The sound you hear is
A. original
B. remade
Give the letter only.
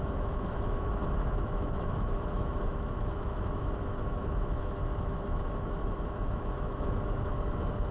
B